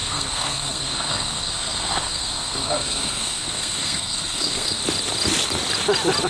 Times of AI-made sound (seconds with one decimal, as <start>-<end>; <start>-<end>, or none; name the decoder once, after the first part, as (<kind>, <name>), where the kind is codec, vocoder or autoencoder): 0.0-4.8 (codec, SNAC)